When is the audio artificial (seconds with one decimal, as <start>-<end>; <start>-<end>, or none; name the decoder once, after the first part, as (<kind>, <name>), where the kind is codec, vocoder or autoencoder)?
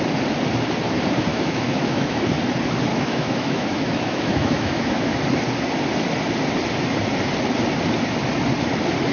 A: 1.3-2.2 (autoencoder, DAC-VAE); 2.9-5.2